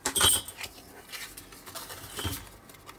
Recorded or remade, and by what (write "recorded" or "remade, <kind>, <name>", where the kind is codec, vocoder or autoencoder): recorded